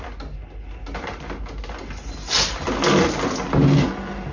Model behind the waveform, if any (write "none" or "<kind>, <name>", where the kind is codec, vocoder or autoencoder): none